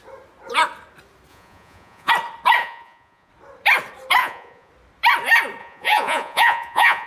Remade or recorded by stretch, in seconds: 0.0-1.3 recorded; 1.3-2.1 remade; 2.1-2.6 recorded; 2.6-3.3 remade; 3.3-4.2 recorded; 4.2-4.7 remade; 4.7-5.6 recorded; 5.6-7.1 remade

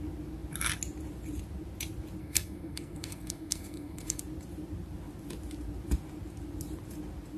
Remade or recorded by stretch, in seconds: 0.0-2.2 recorded; 2.2-4.2 remade; 4.2-7.4 recorded

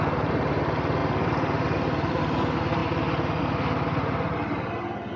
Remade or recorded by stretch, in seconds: 0.0-1.0 recorded; 1.0-2.2 remade; 2.2-5.2 recorded

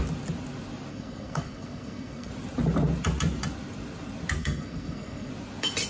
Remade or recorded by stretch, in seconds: 0.0-0.9 recorded; 0.9-2.3 remade; 2.3-4.4 recorded; 4.4-5.3 remade; 5.3-5.9 recorded

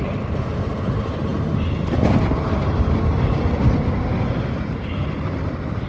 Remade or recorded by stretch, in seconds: 0.0-5.9 recorded

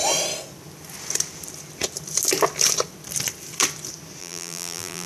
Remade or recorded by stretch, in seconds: 0.0-4.2 recorded; 4.2-5.1 remade

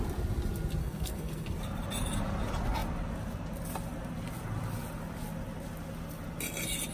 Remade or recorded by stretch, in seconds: 0.0-0.8 recorded; 0.8-1.6 remade; 1.6-6.9 recorded

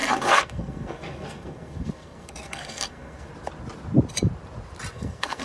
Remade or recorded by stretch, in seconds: 0.0-3.3 remade; 3.3-4.9 recorded; 4.9-5.4 remade